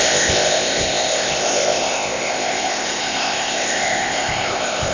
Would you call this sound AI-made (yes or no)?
yes